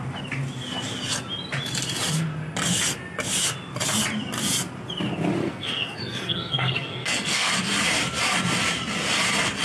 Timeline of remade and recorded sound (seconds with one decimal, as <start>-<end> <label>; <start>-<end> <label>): 0.0-5.4 recorded; 5.4-7.5 remade; 7.5-9.6 recorded